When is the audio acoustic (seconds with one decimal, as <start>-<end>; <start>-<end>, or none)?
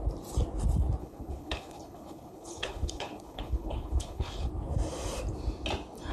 0.0-1.0; 4.5-6.1